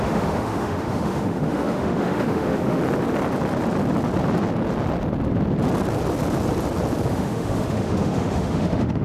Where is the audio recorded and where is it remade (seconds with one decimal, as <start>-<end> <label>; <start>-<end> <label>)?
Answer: 0.0-2.8 remade; 2.8-7.1 recorded; 7.1-9.0 remade